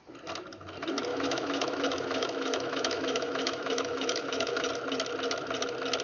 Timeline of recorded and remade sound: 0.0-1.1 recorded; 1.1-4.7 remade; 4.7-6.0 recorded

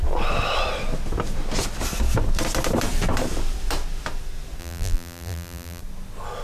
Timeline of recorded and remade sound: 0.0-4.6 recorded; 4.6-5.8 remade; 5.8-6.4 recorded

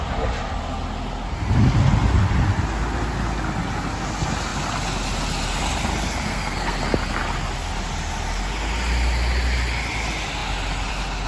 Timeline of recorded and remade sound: 0.0-6.3 recorded; 6.3-6.8 remade; 6.8-11.3 recorded

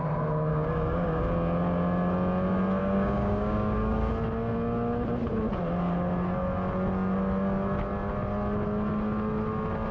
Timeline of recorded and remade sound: 0.0-0.5 recorded; 0.5-1.2 remade; 1.2-2.8 recorded; 2.8-4.1 remade; 4.1-9.9 recorded

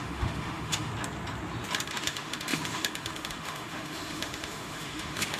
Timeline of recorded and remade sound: 0.0-0.9 remade; 0.9-1.9 recorded; 1.9-5.4 remade

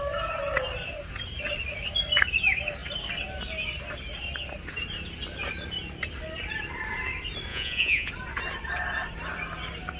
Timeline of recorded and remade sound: 0.0-7.5 recorded; 7.5-8.1 remade; 8.1-10.0 recorded

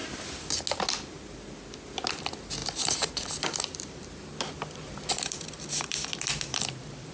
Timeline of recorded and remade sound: 0.0-0.6 remade; 0.6-2.6 recorded; 2.6-7.1 remade

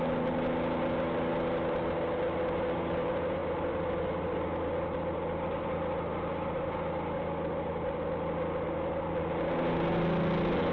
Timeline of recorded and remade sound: 0.0-10.7 recorded